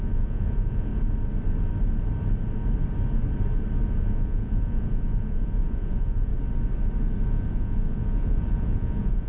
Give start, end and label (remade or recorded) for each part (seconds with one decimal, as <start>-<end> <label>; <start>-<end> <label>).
0.0-0.9 remade; 0.9-4.0 recorded; 4.0-6.3 remade; 6.3-7.3 recorded; 7.3-9.3 remade